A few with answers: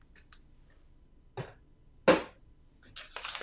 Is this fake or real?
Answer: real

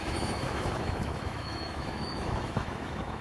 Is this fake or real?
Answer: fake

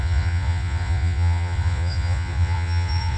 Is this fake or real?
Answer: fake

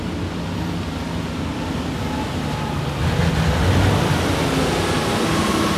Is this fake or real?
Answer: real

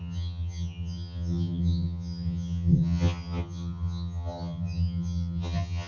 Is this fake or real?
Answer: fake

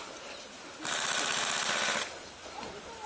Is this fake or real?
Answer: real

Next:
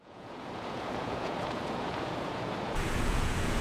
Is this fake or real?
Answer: fake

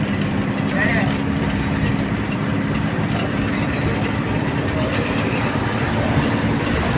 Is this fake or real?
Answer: fake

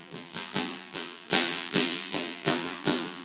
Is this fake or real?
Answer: fake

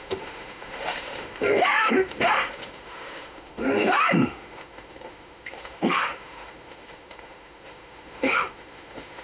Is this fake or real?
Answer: fake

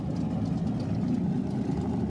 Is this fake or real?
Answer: real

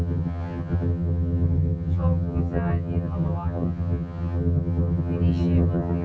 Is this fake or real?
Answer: fake